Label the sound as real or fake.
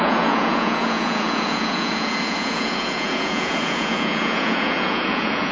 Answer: fake